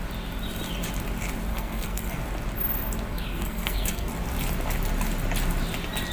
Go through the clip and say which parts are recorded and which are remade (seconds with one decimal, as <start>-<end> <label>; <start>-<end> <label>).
0.0-1.5 recorded; 1.5-2.2 remade; 2.2-3.1 recorded; 3.1-4.1 remade; 4.1-6.1 recorded